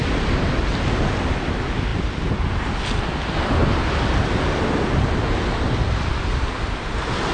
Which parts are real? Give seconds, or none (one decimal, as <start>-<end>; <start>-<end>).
0.0-7.3